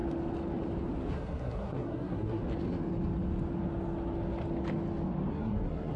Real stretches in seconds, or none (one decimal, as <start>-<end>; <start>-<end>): 0.0-1.1; 2.4-5.3